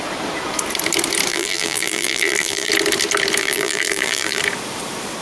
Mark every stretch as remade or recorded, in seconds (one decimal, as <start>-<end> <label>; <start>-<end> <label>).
0.0-1.3 recorded; 1.3-2.7 remade; 2.7-3.4 recorded; 3.4-4.4 remade; 4.4-5.2 recorded